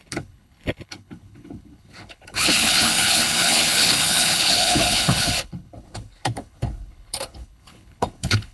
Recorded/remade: remade